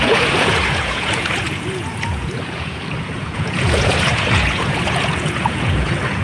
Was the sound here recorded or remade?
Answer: remade